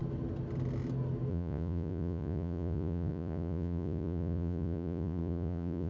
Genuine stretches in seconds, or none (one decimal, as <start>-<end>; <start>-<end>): 0.0-1.3